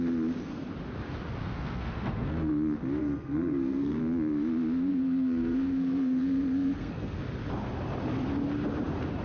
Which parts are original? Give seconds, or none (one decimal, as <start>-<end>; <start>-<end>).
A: 0.0-1.4; 2.5-3.0; 4.0-4.9; 7.2-9.2